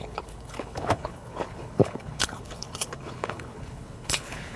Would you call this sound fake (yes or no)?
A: yes